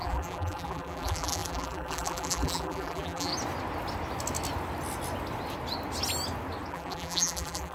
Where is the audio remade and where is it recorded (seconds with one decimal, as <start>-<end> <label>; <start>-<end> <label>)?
0.0-3.3 remade; 3.3-6.7 recorded; 6.7-7.7 remade